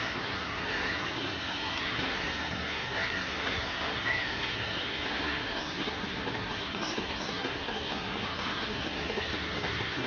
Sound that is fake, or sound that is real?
fake